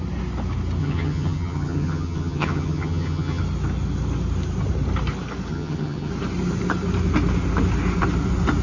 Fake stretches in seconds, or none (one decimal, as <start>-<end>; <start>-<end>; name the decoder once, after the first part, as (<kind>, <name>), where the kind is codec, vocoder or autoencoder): 0.8-3.4 (vocoder, HiFi-GAN); 5.5-6.1